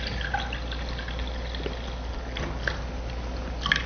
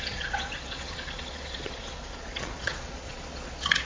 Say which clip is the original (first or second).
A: first